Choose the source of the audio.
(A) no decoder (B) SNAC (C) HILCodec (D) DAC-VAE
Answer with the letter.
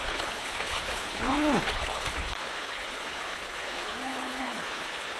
C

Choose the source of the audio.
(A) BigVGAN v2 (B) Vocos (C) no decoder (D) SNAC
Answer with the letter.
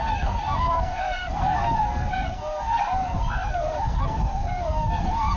D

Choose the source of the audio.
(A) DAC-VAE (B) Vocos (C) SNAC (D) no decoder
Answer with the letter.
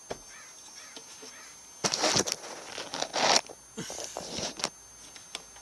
D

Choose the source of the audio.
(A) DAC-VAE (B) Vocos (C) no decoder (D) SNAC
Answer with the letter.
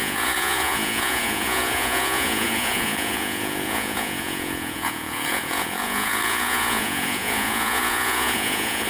B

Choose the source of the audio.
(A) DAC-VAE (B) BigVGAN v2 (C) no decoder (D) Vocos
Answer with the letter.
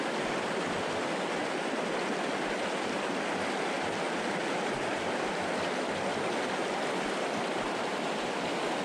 C